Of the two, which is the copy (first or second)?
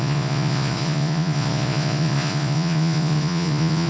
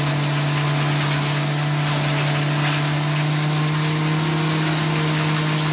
first